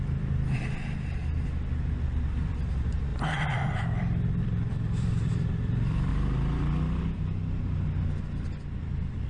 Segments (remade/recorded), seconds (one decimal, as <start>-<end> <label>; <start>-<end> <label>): 0.0-1.2 remade; 1.2-2.2 recorded; 2.2-6.1 remade; 6.1-8.8 recorded; 8.8-9.3 remade